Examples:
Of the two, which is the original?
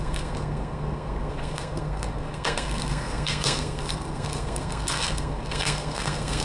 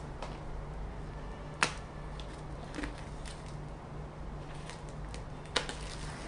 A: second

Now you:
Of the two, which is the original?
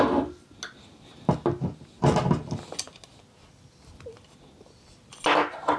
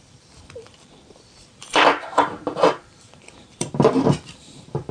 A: first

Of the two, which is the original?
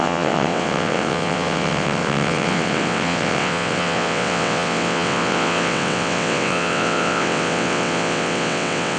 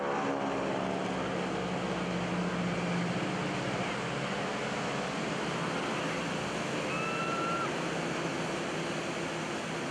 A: second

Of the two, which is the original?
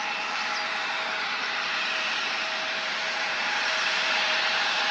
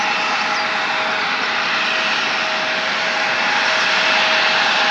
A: second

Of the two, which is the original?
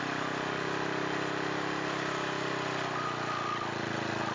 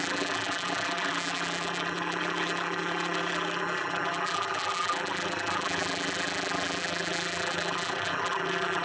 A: first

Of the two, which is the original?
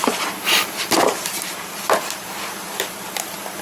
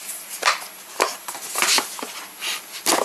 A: second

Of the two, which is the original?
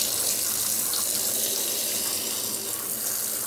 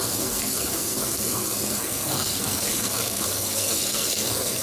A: first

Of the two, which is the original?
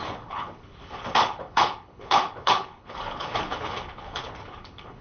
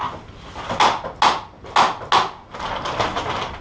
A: second